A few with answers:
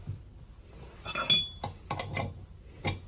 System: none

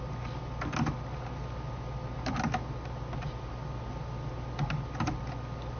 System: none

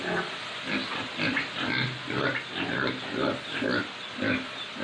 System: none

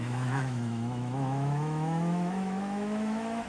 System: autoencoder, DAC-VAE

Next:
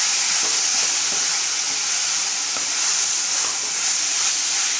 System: none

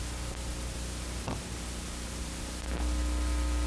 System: none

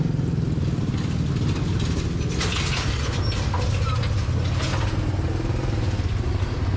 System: none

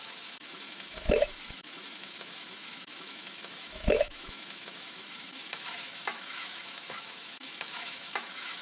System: autoencoder, DAC-VAE